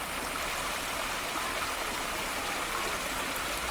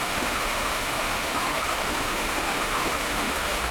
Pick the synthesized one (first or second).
second